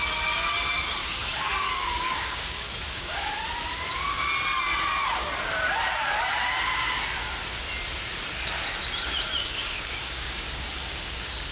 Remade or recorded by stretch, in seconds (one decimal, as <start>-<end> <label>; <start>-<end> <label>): 0.0-1.0 recorded; 1.0-3.3 remade; 3.3-9.4 recorded; 9.4-11.5 remade